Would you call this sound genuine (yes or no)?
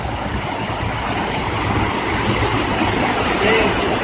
yes